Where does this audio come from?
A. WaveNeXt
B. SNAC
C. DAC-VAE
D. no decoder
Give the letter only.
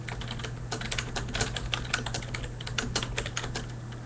D